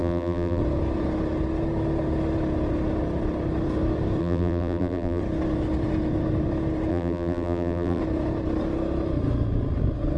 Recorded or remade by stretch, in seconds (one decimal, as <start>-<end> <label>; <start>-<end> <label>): 0.0-0.6 remade; 0.6-4.2 recorded; 4.2-5.2 remade; 5.2-6.9 recorded; 6.9-8.0 remade; 8.0-10.2 recorded